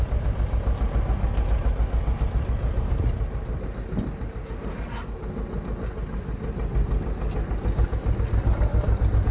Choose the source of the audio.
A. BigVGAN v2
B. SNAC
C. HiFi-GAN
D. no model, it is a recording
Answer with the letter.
D